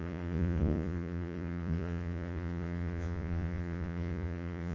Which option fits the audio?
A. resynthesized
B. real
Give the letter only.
A